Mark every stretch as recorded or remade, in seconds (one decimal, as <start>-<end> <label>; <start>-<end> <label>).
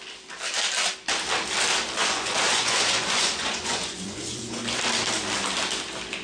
0.0-2.0 recorded; 2.0-4.6 remade; 4.6-6.2 recorded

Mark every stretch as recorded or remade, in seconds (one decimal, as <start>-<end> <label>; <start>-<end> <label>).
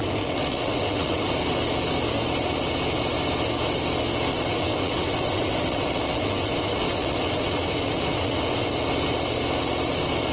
0.0-1.3 remade; 1.3-4.3 recorded; 4.3-8.7 remade; 8.7-10.3 recorded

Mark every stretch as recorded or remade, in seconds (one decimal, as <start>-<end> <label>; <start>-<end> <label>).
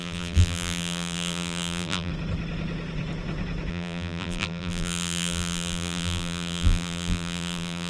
0.0-2.1 remade; 2.1-3.7 recorded; 3.7-7.9 remade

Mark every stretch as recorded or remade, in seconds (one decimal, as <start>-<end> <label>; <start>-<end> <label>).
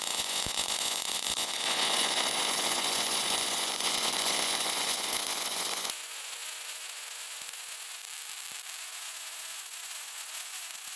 0.0-8.0 remade; 8.0-8.8 recorded; 8.8-11.0 remade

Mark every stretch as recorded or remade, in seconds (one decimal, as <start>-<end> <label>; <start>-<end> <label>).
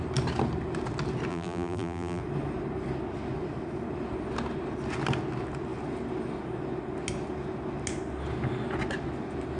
0.0-1.3 recorded; 1.3-2.2 remade; 2.2-9.6 recorded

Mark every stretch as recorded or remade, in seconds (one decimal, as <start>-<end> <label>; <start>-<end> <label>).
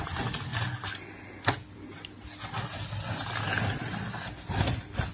0.0-5.1 recorded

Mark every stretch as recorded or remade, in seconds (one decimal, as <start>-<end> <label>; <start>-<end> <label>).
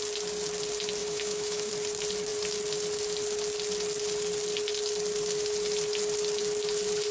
0.0-1.0 recorded; 1.0-1.7 remade; 1.7-7.1 recorded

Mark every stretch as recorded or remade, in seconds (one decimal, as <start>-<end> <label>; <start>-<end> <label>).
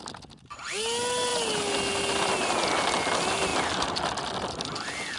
0.0-5.2 recorded